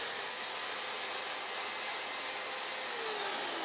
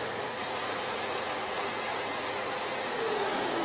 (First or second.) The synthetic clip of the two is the second